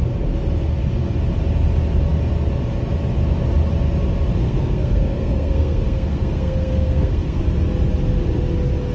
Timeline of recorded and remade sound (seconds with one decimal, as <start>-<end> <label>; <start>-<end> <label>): 0.0-4.4 recorded; 4.4-7.4 remade; 7.4-8.9 recorded